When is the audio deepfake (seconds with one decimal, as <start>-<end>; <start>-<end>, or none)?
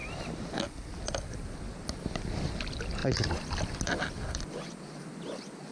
none